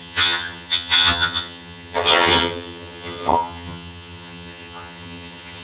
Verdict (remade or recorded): remade